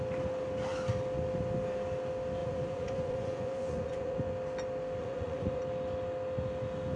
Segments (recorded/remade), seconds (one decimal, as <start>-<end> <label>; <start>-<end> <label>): 0.0-2.4 recorded; 2.4-4.3 remade; 4.3-5.0 recorded; 5.0-5.6 remade; 5.6-7.0 recorded